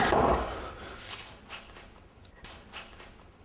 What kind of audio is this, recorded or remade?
remade